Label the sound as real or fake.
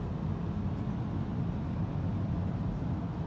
real